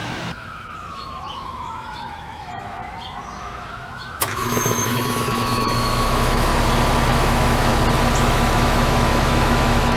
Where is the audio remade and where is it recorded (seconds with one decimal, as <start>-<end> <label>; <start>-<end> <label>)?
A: 0.0-2.8 remade; 2.8-3.4 recorded; 3.4-6.5 remade; 6.5-7.1 recorded; 7.1-7.7 remade; 7.7-8.2 recorded; 8.2-10.0 remade